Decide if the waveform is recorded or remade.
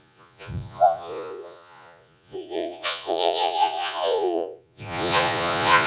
remade